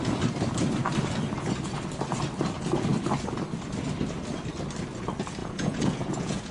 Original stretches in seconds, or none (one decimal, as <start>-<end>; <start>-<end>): 0.0-5.4